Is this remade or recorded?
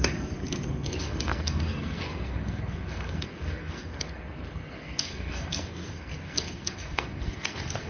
remade